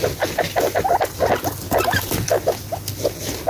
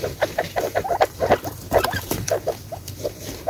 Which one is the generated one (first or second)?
second